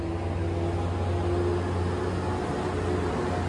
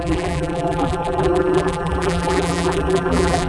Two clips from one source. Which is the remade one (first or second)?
second